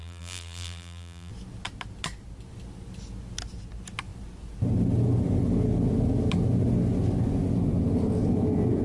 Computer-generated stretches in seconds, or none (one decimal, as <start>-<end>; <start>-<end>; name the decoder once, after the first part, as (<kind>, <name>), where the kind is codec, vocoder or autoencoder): 0.0-1.3 (vocoder, BigVGAN v2)